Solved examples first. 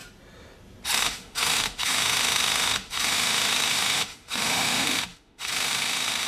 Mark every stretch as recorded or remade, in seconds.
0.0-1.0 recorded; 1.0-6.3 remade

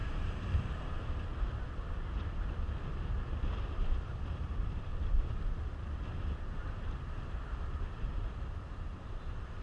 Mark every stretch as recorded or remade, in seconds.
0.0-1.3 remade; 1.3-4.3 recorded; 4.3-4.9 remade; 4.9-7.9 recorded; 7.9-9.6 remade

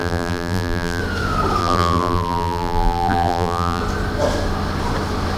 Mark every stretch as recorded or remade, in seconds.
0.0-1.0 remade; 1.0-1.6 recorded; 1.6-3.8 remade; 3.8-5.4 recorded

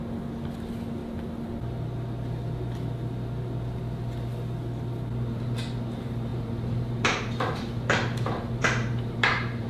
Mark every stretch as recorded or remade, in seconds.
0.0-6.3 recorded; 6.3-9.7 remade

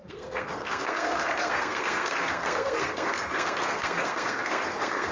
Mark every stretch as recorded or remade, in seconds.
0.0-5.1 remade

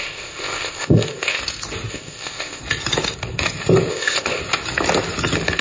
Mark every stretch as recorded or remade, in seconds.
0.0-1.4 remade; 1.4-1.9 recorded; 1.9-2.6 remade; 2.6-3.9 recorded; 3.9-4.4 remade; 4.4-5.6 recorded